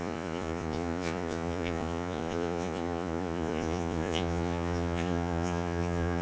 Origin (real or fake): fake